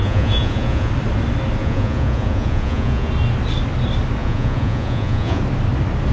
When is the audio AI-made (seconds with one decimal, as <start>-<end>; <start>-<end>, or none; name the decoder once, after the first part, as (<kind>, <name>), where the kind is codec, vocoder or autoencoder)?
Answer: 0.0-0.9 (vocoder, Vocos); 1.6-3.1; 4.2-5.4